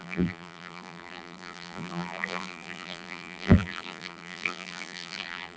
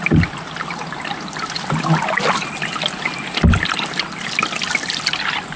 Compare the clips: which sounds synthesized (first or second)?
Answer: first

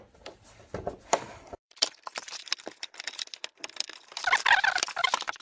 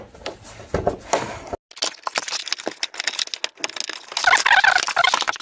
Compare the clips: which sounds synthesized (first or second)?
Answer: first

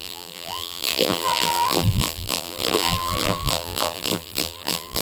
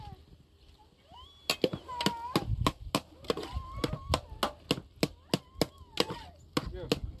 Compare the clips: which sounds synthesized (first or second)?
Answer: first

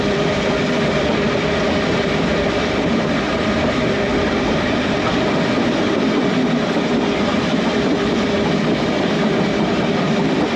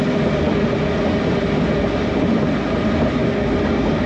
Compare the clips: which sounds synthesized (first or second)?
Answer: first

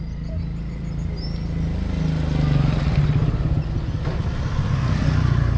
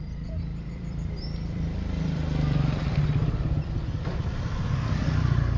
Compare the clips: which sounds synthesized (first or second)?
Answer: second